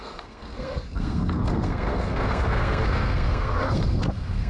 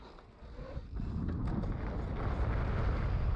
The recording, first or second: second